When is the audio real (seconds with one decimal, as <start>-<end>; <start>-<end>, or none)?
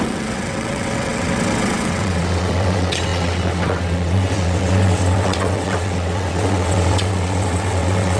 none